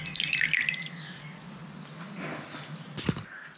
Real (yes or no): yes